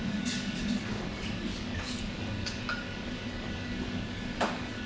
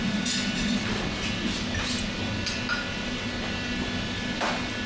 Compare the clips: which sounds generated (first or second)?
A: first